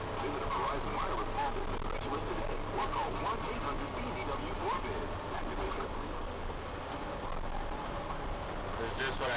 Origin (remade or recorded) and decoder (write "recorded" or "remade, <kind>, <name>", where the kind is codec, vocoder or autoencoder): recorded